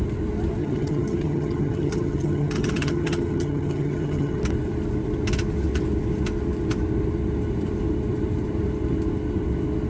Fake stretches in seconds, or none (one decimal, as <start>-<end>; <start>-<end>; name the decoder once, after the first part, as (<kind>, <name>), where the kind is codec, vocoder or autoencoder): 0.6-4.4 (vocoder, HiFi-GAN)